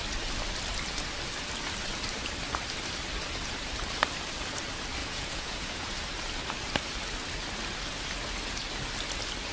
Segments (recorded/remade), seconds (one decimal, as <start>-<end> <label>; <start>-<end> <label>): 0.0-5.0 recorded; 5.0-5.9 remade; 5.9-9.5 recorded